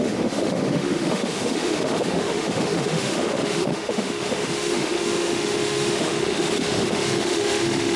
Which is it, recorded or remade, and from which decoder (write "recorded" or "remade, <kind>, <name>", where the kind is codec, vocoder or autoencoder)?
remade, autoencoder, DAC-VAE